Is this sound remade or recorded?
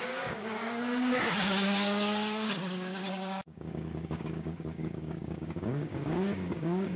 remade